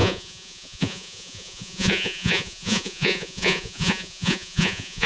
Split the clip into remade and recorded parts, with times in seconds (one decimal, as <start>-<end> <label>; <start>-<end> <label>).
0.0-5.1 remade